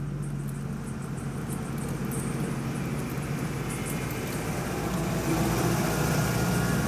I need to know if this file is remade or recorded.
recorded